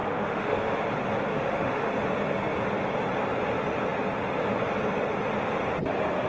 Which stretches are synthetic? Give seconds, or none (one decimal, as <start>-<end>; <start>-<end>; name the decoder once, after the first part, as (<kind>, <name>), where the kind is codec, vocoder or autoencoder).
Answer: 0.0-0.9 (autoencoder, DAC-VAE); 1.3-1.9